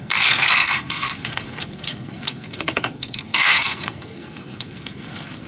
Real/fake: fake